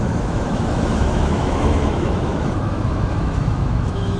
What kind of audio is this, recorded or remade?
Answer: remade